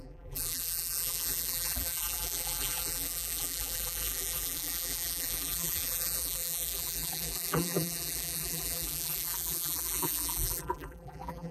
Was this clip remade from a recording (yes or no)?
yes